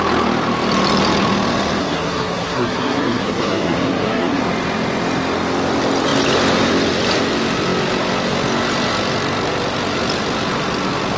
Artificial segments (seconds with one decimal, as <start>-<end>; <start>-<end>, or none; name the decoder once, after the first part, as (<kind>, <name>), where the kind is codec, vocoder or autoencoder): 1.8-4.4 (codec, SNAC)